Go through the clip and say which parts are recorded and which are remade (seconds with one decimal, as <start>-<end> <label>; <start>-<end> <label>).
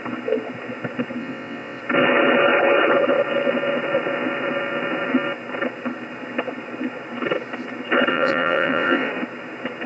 0.0-1.2 recorded; 1.2-1.8 remade; 1.8-8.1 recorded; 8.1-9.1 remade; 9.1-9.9 recorded